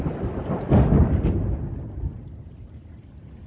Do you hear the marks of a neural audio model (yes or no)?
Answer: no